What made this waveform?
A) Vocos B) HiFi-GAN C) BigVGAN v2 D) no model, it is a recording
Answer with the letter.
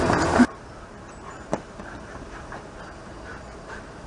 C